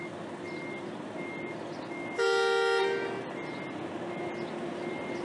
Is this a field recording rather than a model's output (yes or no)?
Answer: yes